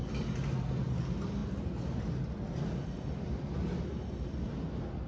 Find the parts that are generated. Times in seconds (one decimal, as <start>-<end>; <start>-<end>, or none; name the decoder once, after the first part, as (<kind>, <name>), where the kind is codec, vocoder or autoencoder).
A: none